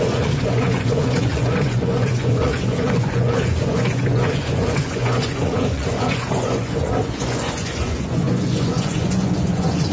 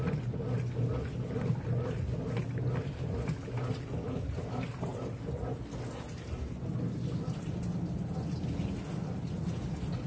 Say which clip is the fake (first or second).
first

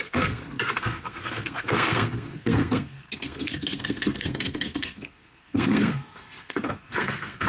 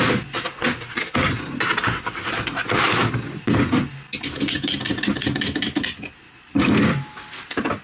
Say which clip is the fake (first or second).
first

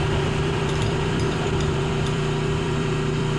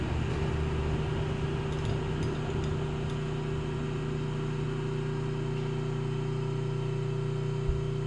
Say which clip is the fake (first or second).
first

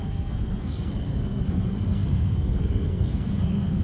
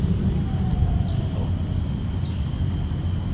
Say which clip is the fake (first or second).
first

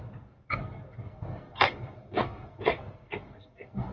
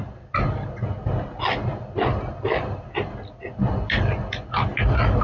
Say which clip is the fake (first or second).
first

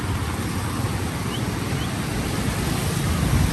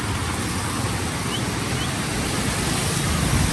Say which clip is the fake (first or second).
first